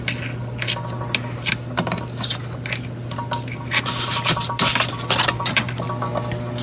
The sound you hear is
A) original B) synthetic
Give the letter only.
A